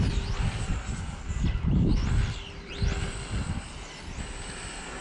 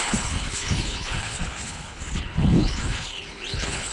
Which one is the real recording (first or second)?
first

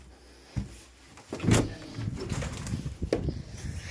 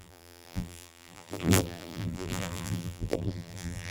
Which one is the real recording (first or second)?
first